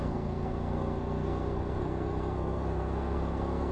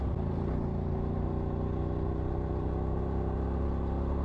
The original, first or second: second